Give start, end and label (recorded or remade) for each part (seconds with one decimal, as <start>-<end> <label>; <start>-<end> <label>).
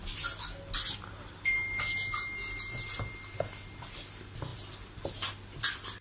0.0-6.0 recorded